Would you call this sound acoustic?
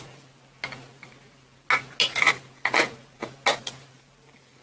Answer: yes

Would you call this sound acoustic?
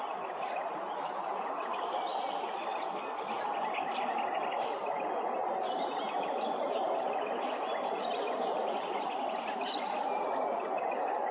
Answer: yes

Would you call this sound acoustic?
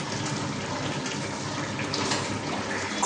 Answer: yes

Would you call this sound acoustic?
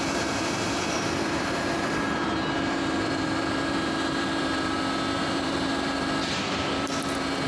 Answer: no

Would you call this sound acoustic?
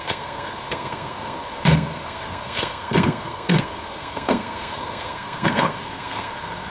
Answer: no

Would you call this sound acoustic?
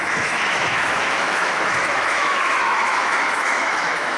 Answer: no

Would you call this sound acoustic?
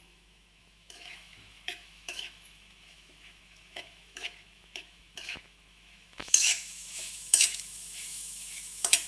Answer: no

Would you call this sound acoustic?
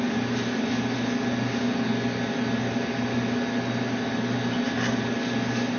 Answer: yes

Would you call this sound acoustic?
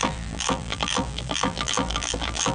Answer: no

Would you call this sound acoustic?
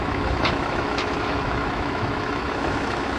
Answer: no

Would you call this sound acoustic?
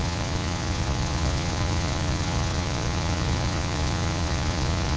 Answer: no